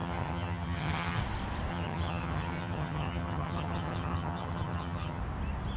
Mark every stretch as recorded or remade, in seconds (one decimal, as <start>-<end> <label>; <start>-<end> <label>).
0.0-1.2 remade; 1.2-1.7 recorded; 1.7-5.2 remade; 5.2-5.8 recorded